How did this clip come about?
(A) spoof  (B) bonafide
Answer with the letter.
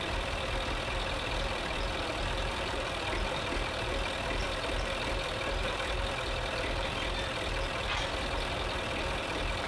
A